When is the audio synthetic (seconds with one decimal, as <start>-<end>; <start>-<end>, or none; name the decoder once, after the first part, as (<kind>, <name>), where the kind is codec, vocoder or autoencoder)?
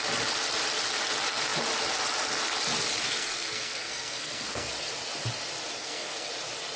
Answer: 3.0-4.7 (codec, SNAC); 5.8-6.3